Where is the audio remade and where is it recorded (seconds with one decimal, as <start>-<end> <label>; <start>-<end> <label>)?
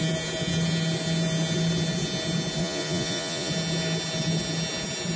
0.0-2.6 recorded; 2.6-3.5 remade; 3.5-5.2 recorded